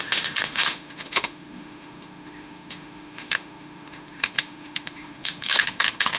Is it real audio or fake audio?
fake